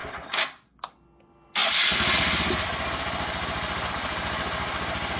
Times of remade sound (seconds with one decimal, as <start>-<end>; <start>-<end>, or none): none